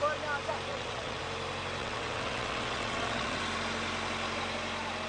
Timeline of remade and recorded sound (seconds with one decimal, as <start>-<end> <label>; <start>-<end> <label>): 0.0-0.7 recorded; 0.7-1.2 remade; 1.2-1.8 recorded; 1.8-3.4 remade; 3.4-5.1 recorded